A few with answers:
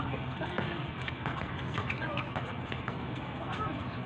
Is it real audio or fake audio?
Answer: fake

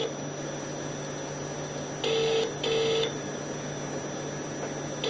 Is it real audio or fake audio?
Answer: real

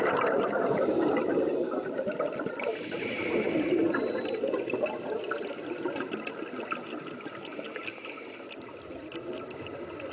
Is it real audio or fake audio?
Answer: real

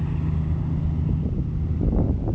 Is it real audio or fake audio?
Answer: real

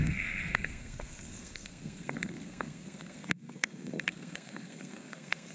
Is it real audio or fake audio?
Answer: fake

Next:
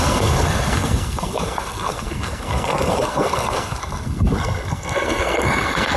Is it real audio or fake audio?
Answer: fake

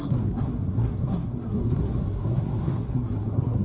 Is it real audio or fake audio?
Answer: fake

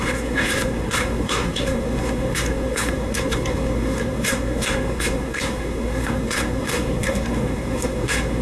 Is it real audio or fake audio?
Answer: fake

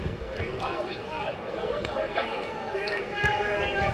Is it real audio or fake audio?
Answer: fake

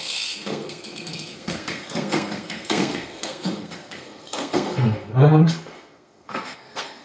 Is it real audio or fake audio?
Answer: fake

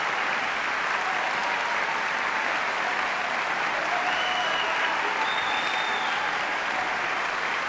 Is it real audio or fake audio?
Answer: real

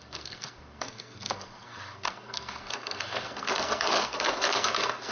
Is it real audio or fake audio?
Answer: fake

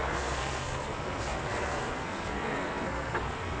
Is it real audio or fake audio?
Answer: fake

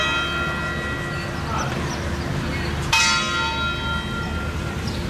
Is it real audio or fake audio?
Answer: real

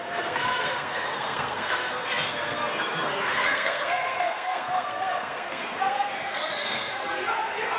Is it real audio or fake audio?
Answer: fake